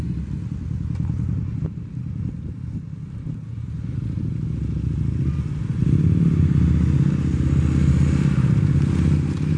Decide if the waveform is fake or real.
real